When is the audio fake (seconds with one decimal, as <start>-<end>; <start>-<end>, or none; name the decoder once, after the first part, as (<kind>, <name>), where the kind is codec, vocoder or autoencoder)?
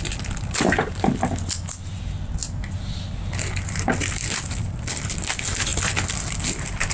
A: none